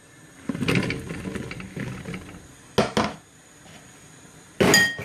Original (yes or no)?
yes